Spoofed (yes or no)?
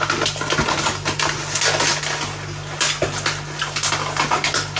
no